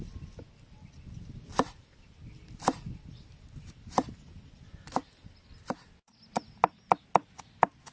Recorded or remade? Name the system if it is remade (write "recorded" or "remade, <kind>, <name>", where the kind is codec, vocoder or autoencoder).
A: recorded